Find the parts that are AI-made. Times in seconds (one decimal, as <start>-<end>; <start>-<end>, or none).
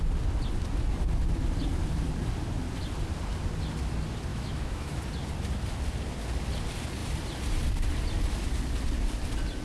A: 4.3-5.0